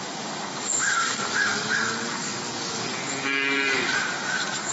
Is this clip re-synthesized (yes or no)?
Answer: yes